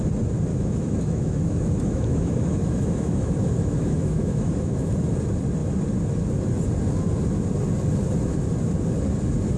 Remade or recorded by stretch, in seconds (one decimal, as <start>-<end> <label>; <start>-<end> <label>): 0.0-0.5 recorded; 0.5-4.9 remade; 4.9-9.6 recorded